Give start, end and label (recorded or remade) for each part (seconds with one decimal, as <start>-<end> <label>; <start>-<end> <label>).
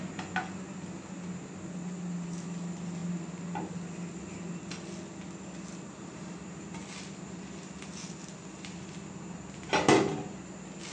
0.0-10.9 recorded